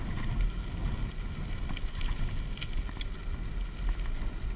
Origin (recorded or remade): recorded